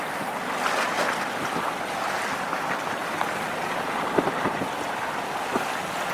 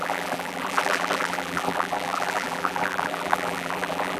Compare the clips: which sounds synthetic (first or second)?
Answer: second